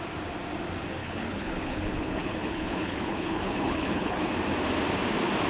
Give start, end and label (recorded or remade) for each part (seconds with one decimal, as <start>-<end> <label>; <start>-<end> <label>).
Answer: 0.0-1.0 recorded; 1.0-4.3 remade; 4.3-5.5 recorded